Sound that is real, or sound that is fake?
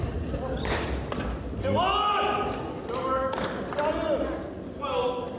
real